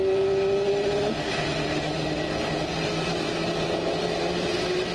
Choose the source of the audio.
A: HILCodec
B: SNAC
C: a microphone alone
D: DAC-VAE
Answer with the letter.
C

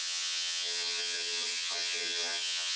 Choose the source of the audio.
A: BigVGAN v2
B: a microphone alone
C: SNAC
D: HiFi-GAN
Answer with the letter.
D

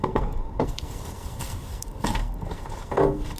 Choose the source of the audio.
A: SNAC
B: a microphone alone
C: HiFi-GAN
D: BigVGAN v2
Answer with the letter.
A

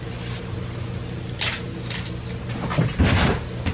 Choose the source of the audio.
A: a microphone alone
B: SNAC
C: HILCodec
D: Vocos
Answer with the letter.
A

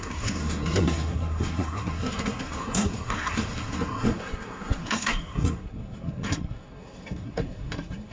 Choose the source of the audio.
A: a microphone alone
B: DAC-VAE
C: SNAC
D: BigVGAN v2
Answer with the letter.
C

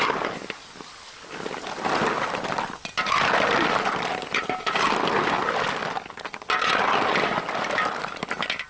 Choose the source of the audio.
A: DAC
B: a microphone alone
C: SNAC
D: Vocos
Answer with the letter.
B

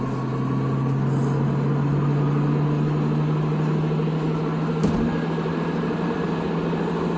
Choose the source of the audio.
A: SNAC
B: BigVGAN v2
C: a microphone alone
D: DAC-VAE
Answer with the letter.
C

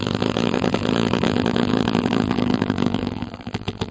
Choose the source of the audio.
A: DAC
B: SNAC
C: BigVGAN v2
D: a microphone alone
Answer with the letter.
C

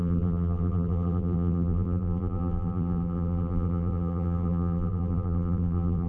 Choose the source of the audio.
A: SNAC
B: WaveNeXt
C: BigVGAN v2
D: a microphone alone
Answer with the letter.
C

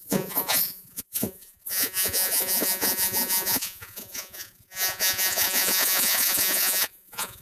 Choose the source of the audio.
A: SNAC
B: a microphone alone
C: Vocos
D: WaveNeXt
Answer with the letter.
C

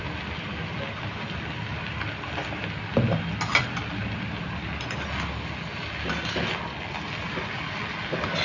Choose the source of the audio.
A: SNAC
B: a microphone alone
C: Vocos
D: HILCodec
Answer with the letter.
B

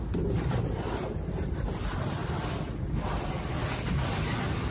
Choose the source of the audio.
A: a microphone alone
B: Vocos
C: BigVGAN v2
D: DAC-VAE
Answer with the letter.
A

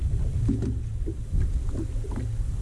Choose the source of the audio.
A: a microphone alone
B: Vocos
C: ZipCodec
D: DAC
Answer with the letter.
A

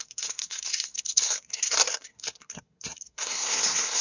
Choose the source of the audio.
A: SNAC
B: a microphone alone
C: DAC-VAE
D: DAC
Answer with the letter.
A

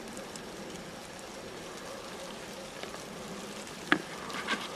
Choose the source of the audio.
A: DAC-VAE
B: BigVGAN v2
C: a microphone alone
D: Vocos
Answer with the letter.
C